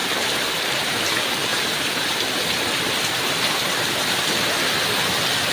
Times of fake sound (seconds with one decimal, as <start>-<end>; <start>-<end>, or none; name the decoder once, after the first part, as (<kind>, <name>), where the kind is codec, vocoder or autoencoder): 0.0-1.0 (vocoder, BigVGAN v2); 1.5-4.2